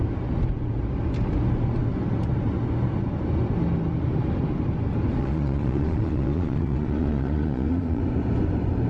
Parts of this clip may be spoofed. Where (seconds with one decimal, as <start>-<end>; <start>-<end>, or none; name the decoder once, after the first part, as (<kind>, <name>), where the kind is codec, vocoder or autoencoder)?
5.2-8.0 (vocoder, Vocos)